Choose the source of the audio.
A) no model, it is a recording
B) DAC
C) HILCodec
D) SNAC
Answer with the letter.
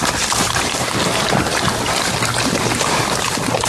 A